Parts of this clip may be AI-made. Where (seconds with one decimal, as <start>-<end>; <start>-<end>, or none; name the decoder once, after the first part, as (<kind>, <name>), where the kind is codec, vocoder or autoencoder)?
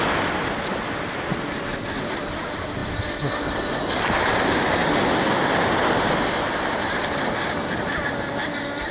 none